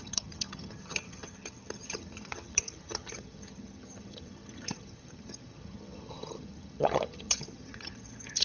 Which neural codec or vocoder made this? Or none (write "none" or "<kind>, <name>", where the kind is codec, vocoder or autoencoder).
vocoder, HiFi-GAN